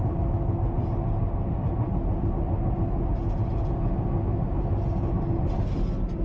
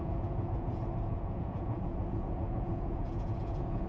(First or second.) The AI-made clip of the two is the second